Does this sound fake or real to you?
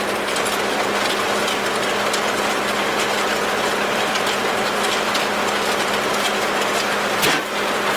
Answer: real